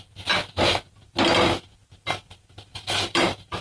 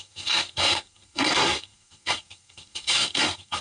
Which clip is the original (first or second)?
first